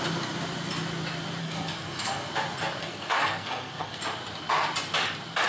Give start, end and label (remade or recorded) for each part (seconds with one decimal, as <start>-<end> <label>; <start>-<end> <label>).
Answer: 0.0-1.4 recorded; 1.4-2.3 remade; 2.3-2.8 recorded; 2.8-4.0 remade; 4.0-5.5 recorded